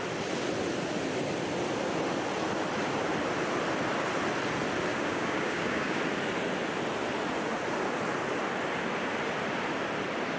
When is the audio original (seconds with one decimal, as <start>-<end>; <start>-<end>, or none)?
0.0-4.9; 6.0-10.4